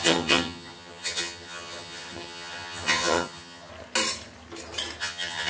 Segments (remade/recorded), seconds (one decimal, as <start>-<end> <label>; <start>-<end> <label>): 0.0-3.7 remade; 3.7-5.0 recorded; 5.0-5.5 remade